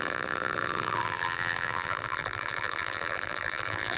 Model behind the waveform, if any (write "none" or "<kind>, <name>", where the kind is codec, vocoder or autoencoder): vocoder, BigVGAN v2